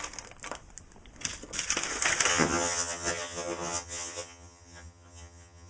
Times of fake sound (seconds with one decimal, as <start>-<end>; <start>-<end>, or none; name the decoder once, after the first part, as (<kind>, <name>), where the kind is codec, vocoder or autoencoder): 2.3-5.7 (vocoder, HiFi-GAN)